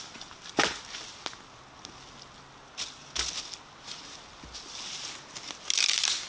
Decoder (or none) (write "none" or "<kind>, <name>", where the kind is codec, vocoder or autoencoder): none